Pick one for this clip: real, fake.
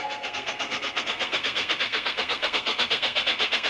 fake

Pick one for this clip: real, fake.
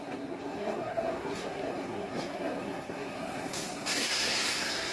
fake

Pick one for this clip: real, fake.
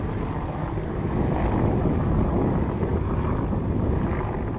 real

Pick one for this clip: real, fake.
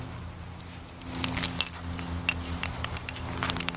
real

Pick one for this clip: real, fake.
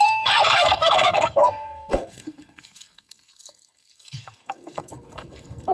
fake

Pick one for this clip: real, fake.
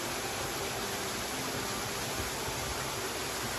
real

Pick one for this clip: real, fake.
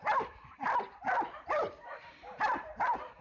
real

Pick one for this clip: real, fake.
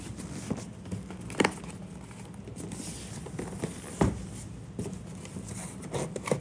real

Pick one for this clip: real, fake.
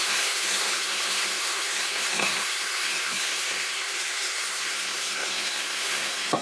fake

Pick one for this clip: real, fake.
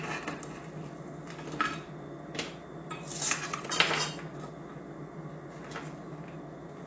real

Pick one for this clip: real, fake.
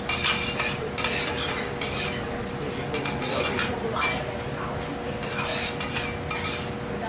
real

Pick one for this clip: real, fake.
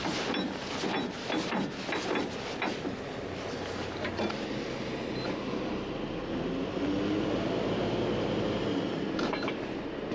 real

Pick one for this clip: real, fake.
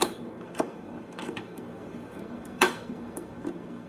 fake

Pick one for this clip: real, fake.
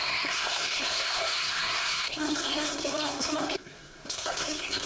fake